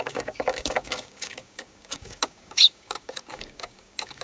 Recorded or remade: remade